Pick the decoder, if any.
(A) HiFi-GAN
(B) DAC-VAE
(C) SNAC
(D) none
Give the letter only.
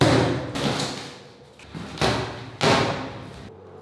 D